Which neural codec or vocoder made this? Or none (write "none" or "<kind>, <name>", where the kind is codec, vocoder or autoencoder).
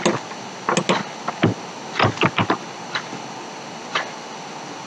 none